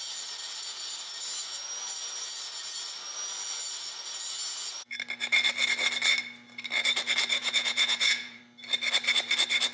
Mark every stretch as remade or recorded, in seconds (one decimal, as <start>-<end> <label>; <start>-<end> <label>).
0.0-7.4 recorded; 7.4-8.4 remade; 8.4-9.7 recorded